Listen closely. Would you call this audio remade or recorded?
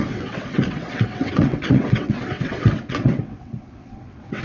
remade